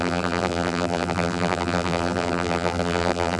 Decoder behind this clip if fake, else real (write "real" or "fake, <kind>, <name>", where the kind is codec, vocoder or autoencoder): fake, vocoder, BigVGAN v2